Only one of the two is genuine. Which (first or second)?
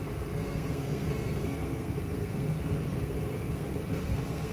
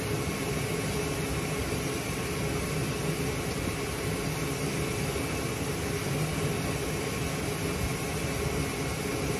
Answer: second